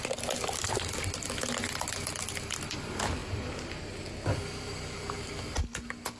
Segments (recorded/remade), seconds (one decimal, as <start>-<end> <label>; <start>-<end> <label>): 0.0-6.2 recorded